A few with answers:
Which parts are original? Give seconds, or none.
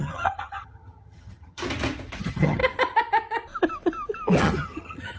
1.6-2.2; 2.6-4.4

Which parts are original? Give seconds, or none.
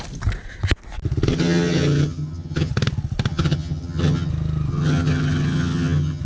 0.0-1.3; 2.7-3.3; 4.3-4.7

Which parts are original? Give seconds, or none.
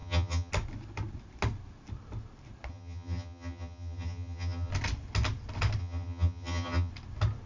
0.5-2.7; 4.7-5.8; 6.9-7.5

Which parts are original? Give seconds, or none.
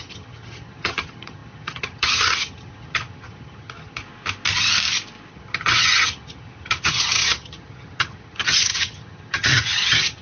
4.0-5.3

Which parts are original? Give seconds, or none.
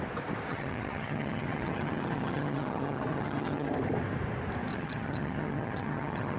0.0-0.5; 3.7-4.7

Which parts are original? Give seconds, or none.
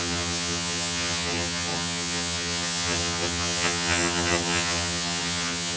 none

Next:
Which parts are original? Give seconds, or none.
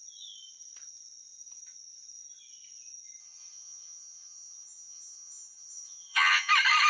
0.0-3.2; 6.5-6.9